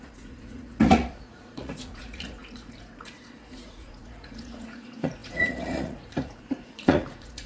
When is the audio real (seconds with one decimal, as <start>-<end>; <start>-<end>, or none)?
none